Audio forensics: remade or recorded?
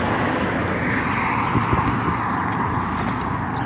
recorded